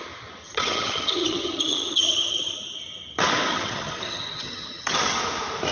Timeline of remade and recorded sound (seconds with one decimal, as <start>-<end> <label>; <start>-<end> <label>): 0.0-0.4 recorded; 0.4-2.5 remade; 2.5-3.5 recorded; 3.5-5.2 remade; 5.2-5.7 recorded